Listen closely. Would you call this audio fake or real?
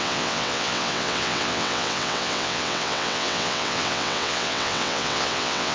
fake